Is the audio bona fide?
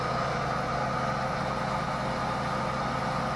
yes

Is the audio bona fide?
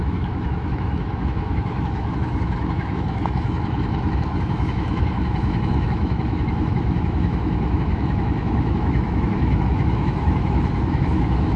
no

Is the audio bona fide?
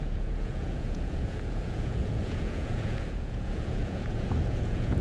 no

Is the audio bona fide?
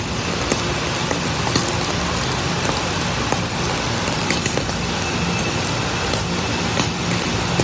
yes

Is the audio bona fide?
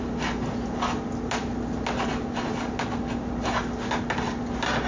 yes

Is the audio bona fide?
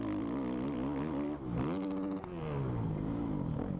yes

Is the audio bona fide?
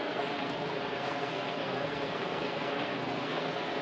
no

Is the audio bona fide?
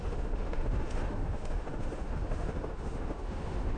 no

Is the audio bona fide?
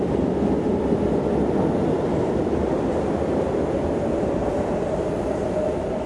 yes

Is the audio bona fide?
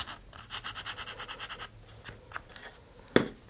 yes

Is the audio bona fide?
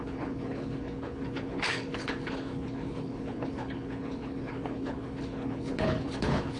no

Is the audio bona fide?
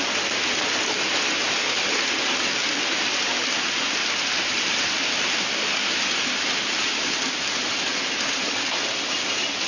yes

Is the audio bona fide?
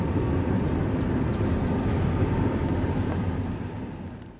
yes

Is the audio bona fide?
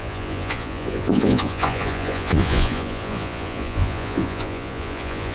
no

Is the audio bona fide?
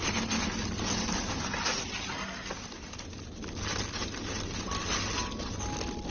yes